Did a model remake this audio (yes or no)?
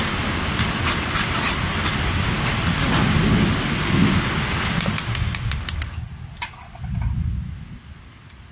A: no